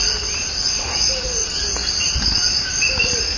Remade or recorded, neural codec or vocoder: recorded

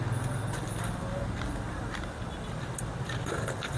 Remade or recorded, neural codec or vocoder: recorded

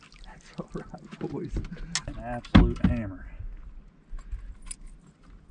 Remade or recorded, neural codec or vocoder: recorded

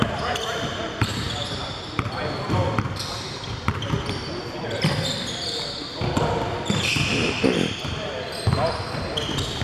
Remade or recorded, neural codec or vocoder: remade, vocoder, BigVGAN v2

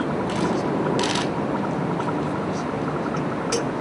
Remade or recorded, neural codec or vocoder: recorded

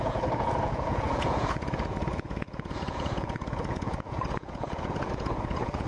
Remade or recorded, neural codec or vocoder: remade, vocoder, Vocos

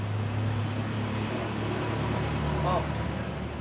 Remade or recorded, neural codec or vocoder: recorded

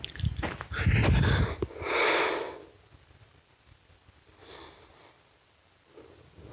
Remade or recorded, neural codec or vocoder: recorded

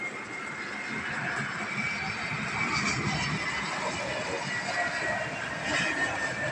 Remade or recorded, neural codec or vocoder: recorded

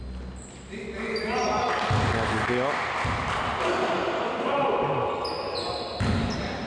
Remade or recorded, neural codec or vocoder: recorded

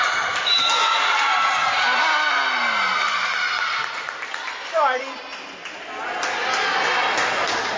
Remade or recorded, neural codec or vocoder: recorded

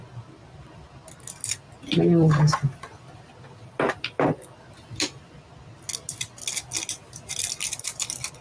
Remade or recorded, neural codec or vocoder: recorded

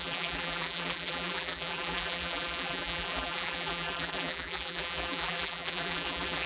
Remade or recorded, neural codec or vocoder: remade, vocoder, BigVGAN v2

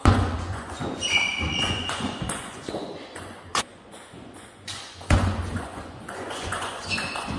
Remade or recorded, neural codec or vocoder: remade, vocoder, Vocos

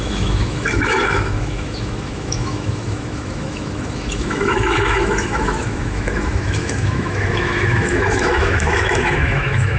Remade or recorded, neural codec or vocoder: remade, autoencoder, DAC-VAE